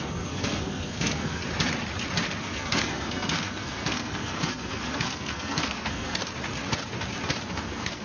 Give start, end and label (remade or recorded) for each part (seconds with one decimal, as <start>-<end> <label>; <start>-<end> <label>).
0.0-1.4 remade; 1.4-2.4 recorded; 2.4-6.2 remade; 6.2-7.5 recorded; 7.5-8.0 remade